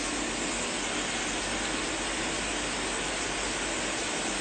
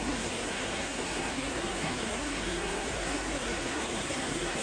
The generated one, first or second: second